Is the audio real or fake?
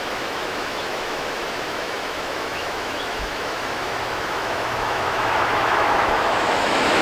fake